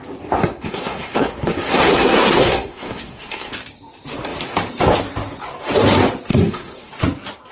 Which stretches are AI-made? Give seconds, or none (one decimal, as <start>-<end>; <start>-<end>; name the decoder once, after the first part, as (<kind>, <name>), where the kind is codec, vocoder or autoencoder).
0.4-3.5 (codec, SNAC); 6.3-6.9